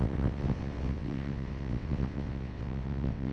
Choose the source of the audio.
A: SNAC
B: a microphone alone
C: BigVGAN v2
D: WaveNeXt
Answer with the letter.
D